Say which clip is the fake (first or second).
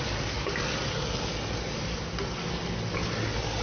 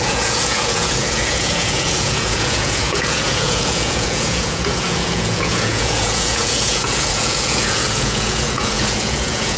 second